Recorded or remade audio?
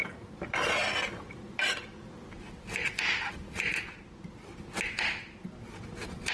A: recorded